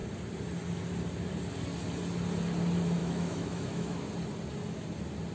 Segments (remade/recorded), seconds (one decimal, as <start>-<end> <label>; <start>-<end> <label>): 0.0-3.0 recorded; 3.0-4.1 remade; 4.1-5.3 recorded